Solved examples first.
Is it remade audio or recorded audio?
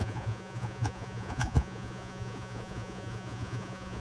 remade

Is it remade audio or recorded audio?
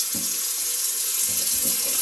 remade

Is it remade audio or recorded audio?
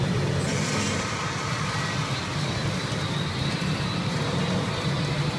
recorded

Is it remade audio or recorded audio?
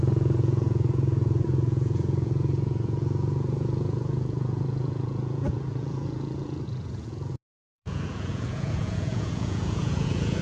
remade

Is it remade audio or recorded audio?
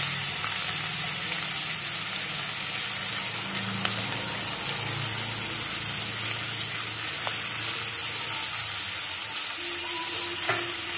recorded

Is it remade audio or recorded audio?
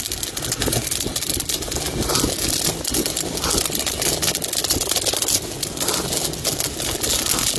recorded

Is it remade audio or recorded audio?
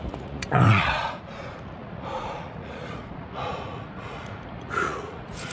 remade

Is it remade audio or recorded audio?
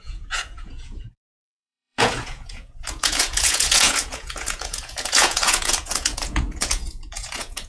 remade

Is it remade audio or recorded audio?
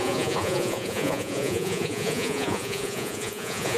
remade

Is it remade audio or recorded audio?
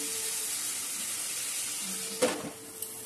recorded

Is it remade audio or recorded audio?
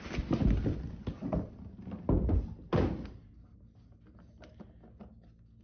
recorded